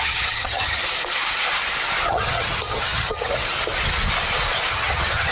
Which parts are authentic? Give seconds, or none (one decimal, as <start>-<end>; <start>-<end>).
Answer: 0.8-2.1; 3.4-4.7